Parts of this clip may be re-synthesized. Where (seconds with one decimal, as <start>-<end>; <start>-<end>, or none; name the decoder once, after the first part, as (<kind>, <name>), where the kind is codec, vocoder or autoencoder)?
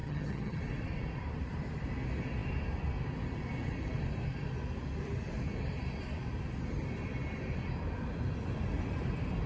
0.0-0.6 (vocoder, HiFi-GAN)